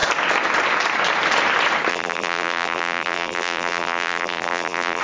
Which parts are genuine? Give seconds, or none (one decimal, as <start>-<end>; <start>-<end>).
0.0-1.9